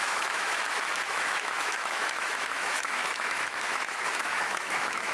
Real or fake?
fake